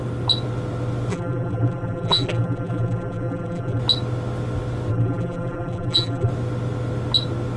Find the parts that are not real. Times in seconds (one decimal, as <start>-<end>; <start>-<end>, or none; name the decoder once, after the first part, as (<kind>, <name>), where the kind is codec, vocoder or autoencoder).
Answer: 1.1-3.8 (vocoder, BigVGAN v2); 4.9-6.3